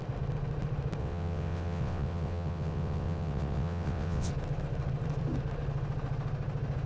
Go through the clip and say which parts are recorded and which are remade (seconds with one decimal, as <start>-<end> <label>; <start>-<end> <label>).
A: 0.0-1.0 recorded; 1.0-4.3 remade; 4.3-6.9 recorded